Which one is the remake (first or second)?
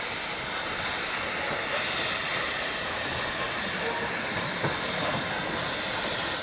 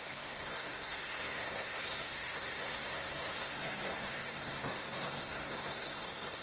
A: second